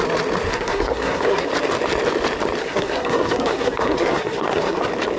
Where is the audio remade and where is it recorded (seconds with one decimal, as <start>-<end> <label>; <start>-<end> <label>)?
0.0-0.5 recorded; 0.5-1.5 remade; 1.5-2.6 recorded; 2.6-4.8 remade; 4.8-5.2 recorded